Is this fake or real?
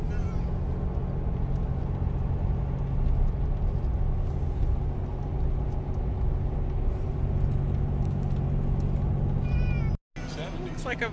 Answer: real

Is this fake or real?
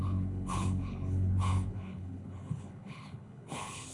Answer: fake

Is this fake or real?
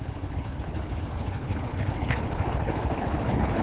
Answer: fake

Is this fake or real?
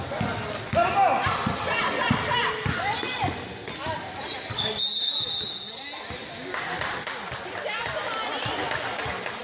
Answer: real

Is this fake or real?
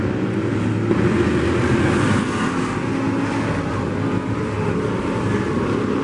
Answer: real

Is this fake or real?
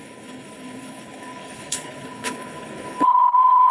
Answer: fake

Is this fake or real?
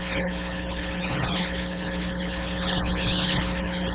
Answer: fake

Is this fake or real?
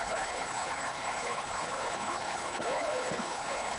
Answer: fake